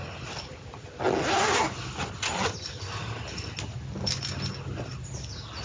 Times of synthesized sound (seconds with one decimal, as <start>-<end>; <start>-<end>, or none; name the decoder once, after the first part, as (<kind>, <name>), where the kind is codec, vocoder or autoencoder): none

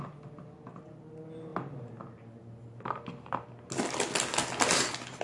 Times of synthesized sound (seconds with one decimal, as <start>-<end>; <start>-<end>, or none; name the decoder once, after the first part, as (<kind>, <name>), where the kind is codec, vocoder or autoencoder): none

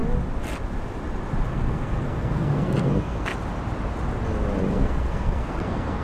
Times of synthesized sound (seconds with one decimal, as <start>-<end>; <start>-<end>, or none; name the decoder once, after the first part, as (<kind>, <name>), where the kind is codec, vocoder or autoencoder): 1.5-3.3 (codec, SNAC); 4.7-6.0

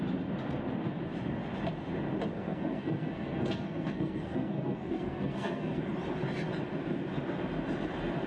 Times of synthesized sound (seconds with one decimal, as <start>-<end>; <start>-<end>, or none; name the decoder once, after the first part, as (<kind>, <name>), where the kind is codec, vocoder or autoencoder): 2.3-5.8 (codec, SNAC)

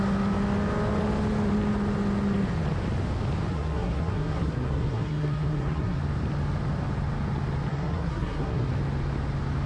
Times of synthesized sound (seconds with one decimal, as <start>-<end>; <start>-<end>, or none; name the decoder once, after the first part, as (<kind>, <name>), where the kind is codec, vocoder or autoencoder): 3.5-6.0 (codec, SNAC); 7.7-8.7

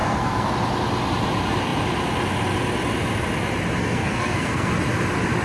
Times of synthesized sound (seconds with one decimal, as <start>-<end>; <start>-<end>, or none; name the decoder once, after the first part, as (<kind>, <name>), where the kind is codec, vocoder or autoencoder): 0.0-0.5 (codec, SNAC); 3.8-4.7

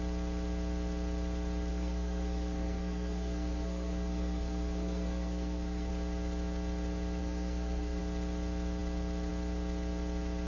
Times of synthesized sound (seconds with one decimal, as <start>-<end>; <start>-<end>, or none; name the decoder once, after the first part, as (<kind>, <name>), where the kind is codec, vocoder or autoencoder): 1.7-5.9 (codec, SNAC); 7.2-8.0

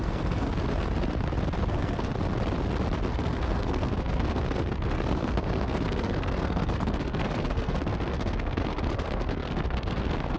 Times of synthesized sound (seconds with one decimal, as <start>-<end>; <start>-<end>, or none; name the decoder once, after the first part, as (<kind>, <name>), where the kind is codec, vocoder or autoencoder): 0.0-0.5 (codec, SNAC); 1.6-2.1; 3.1-10.4